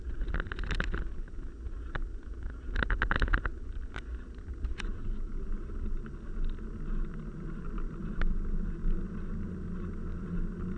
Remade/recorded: recorded